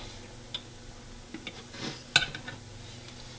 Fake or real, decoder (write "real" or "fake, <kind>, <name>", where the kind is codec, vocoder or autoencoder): real